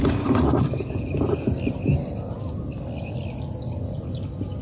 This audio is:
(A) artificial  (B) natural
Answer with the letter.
B